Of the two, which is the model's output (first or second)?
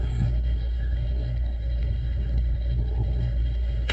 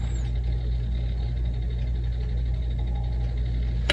first